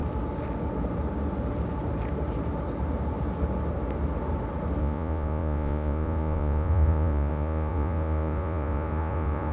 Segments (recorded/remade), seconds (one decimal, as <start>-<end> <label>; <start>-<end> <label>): 0.0-4.8 recorded; 4.8-9.5 remade